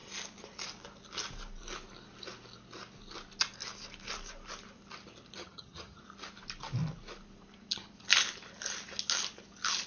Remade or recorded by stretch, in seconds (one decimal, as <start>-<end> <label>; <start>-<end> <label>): 0.0-5.4 recorded; 5.4-6.0 remade; 6.0-9.9 recorded